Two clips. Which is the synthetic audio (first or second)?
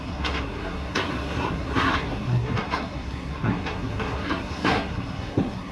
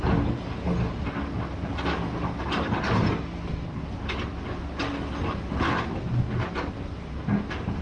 first